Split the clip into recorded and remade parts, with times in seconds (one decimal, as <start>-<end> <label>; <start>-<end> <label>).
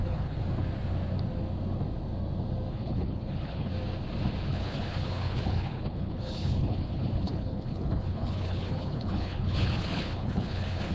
0.0-0.4 remade; 0.4-2.7 recorded; 2.7-3.7 remade; 3.7-4.5 recorded; 4.5-10.9 remade